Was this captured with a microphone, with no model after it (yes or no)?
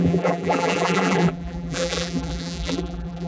no